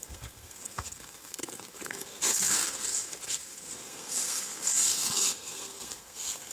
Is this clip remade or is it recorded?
remade